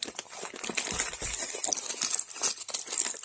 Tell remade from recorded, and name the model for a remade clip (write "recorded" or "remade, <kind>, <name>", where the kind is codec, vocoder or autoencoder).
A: recorded